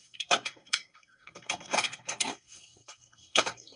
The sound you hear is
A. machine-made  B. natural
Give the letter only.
A